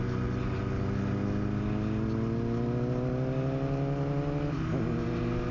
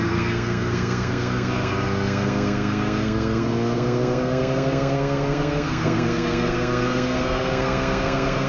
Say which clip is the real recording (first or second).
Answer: first